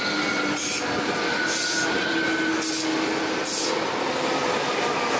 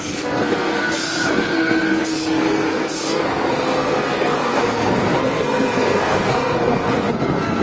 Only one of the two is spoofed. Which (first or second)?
second